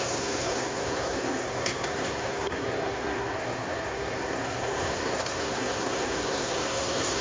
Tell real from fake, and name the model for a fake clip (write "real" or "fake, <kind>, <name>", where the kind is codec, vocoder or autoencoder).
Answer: fake, codec, SNAC